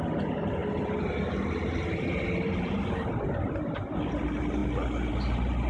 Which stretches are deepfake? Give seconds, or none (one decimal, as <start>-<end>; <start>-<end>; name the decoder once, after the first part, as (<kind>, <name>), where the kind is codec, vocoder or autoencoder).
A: none